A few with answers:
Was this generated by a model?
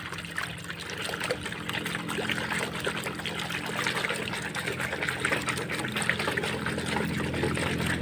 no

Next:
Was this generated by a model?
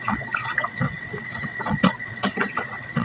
yes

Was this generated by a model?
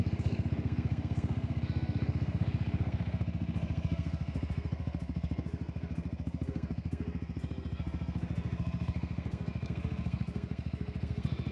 yes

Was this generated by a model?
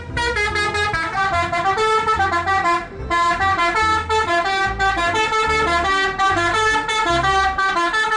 no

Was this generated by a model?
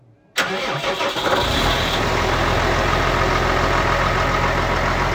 no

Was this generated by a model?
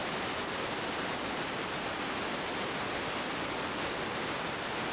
no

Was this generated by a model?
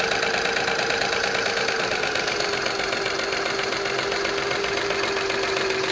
no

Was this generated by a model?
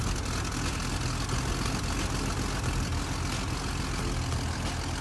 no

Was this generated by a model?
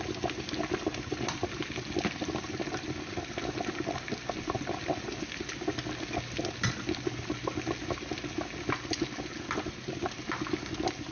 no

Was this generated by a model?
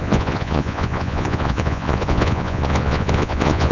yes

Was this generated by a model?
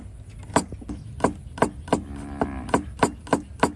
no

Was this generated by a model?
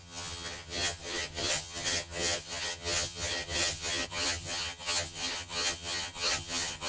yes